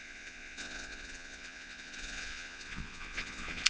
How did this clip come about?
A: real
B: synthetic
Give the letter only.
B